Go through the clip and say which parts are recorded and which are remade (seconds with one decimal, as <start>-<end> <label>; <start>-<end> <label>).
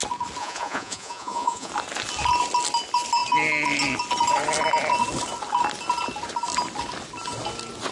0.0-0.4 recorded; 0.4-1.7 remade; 1.7-7.9 recorded